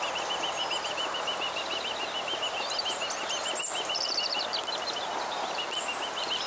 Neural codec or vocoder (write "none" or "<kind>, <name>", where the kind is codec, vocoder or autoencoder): none